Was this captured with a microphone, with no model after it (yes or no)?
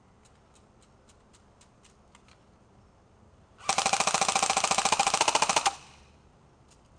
yes